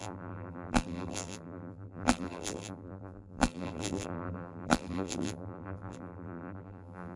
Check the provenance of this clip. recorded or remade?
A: remade